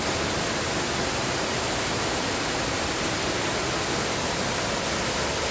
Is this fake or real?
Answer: real